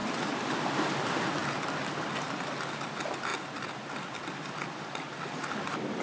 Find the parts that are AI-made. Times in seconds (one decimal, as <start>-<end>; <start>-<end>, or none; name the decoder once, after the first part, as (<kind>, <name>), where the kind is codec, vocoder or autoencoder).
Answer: none